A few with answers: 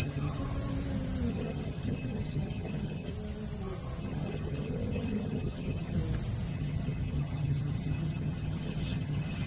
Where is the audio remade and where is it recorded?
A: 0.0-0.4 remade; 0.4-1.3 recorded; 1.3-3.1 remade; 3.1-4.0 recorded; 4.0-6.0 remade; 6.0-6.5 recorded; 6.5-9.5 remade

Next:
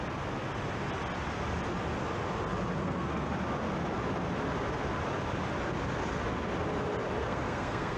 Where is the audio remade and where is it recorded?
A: 0.0-2.8 recorded; 2.8-3.3 remade; 3.3-7.2 recorded; 7.2-8.0 remade